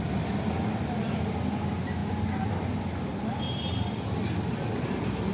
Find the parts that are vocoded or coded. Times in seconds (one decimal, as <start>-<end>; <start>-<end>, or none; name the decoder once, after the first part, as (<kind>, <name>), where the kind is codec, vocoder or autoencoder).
none